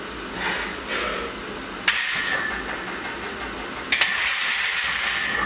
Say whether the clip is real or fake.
real